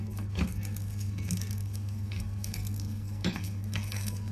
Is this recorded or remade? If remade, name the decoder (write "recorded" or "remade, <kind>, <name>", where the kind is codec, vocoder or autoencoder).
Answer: remade, codec, SNAC